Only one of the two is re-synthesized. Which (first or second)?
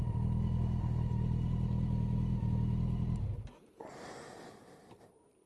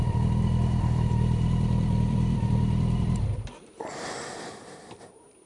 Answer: second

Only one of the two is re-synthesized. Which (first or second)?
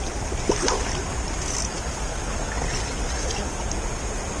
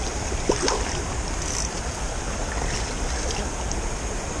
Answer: second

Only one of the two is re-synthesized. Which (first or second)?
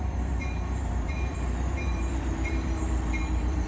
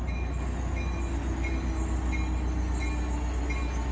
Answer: first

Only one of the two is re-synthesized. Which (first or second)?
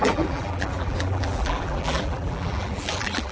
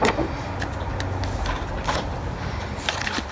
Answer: first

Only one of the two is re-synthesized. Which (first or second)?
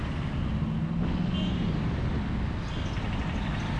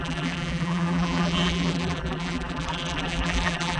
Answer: second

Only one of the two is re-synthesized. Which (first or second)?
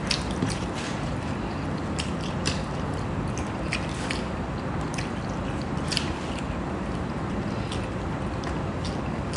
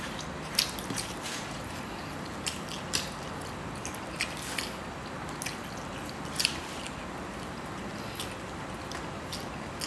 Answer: first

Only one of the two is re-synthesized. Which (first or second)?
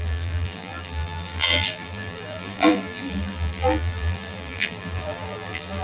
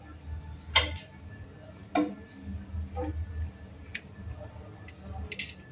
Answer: first